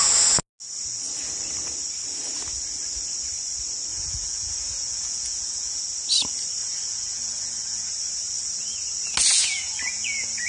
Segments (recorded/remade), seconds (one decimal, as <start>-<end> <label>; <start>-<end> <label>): 0.0-3.9 recorded; 3.9-5.8 remade; 5.8-6.6 recorded; 6.6-7.9 remade; 7.9-9.3 recorded; 9.3-10.5 remade